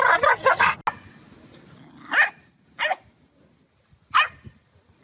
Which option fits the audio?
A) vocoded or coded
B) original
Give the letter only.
B